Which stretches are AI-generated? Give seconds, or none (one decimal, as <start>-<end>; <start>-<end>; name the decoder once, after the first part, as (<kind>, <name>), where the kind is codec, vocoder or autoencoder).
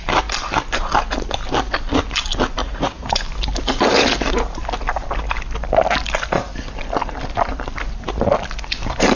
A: 2.6-3.2 (vocoder, Vocos)